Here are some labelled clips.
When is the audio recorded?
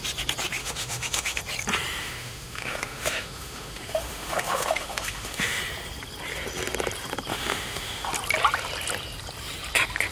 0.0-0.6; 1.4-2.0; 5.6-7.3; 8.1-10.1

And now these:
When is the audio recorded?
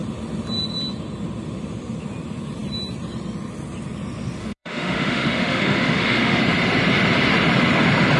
0.0-4.4; 6.4-8.2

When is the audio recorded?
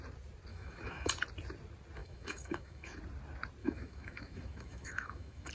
0.0-0.5; 1.1-2.0; 3.0-3.6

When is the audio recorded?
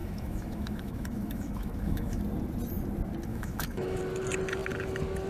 2.2-3.3; 4.0-5.3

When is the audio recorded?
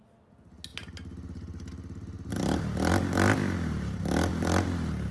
0.0-5.1